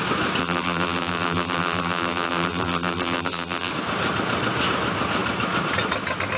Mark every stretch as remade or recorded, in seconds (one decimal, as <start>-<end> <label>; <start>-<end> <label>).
0.0-0.4 recorded; 0.4-3.7 remade; 3.7-6.4 recorded